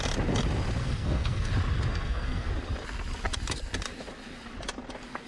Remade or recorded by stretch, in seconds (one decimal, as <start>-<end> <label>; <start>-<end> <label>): 0.0-0.8 recorded; 0.8-1.5 remade; 1.5-1.9 recorded; 1.9-2.5 remade; 2.5-5.3 recorded